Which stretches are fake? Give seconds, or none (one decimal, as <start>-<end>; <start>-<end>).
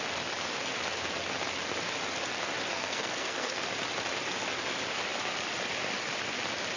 2.7-3.6